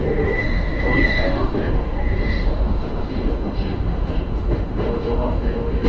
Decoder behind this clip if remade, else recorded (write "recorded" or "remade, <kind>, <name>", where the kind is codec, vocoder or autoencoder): remade, autoencoder, DAC-VAE